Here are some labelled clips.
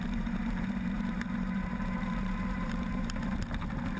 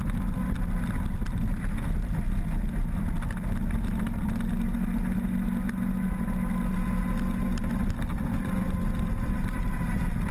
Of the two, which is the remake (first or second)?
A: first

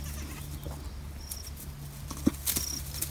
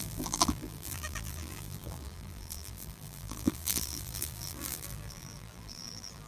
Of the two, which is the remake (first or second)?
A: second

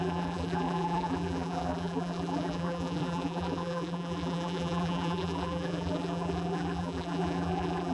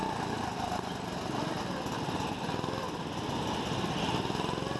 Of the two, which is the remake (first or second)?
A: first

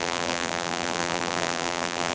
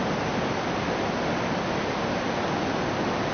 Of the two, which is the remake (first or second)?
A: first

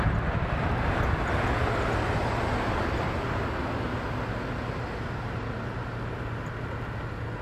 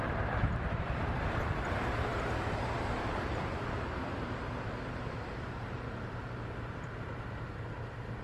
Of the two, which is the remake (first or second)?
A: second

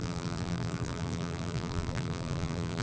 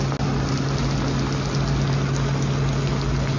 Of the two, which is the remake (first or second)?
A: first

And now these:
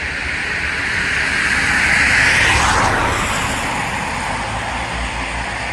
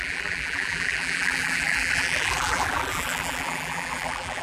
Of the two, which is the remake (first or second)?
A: second